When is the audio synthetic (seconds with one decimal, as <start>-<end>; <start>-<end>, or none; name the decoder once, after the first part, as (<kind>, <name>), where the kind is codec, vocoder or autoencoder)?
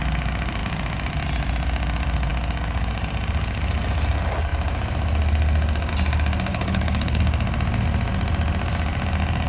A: 6.5-7.2 (codec, HILCodec)